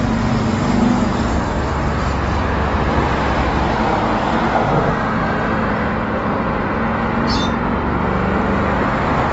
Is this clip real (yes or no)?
yes